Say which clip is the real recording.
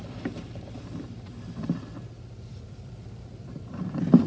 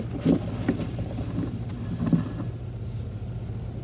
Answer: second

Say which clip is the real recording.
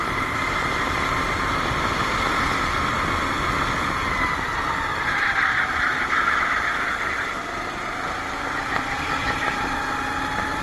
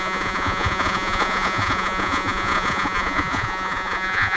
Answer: first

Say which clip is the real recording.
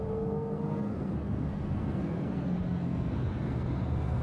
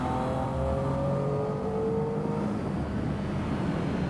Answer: second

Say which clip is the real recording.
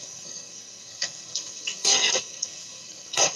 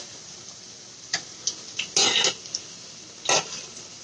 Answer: second